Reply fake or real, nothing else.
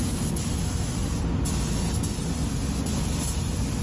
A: real